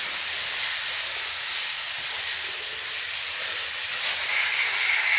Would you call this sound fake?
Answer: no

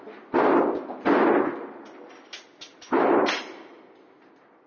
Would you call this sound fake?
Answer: no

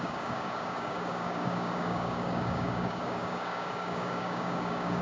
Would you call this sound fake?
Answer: yes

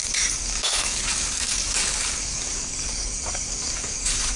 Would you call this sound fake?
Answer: yes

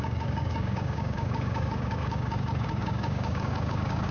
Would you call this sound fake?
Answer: yes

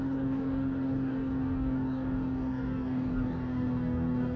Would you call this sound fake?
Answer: yes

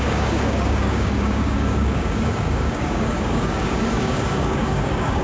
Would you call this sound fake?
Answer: yes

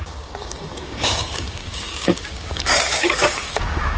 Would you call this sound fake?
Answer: yes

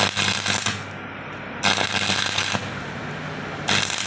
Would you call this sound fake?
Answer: no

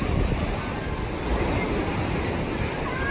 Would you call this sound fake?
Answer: no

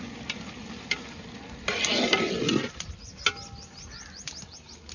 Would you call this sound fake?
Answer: no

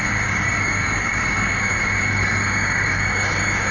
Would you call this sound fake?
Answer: yes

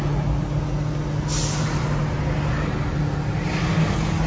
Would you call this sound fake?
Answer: no